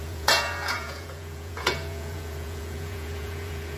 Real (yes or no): no